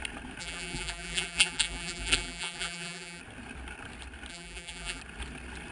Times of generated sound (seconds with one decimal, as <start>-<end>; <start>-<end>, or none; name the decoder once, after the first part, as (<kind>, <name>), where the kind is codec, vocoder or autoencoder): 0.4-3.2 (vocoder, BigVGAN v2); 4.3-5.0